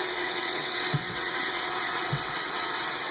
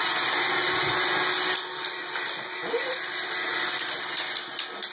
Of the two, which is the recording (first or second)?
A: second